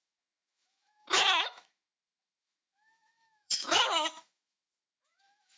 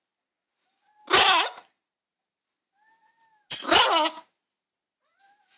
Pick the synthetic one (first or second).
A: first